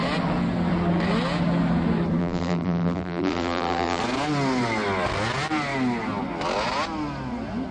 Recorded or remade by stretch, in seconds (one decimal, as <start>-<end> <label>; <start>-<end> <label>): 0.0-2.2 recorded; 2.2-4.0 remade; 4.0-7.7 recorded